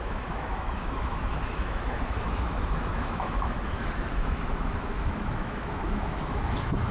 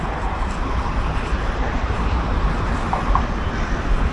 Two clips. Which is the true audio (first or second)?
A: second